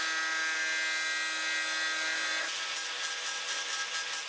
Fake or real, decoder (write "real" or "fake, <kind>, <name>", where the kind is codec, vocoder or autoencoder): real